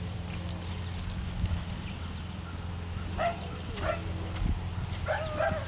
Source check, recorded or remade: recorded